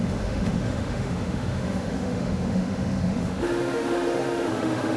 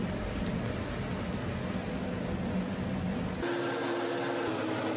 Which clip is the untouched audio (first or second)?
second